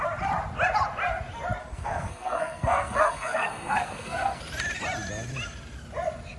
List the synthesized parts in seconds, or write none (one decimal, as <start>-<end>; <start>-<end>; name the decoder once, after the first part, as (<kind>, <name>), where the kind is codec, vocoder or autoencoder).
1.7-4.4 (codec, SNAC)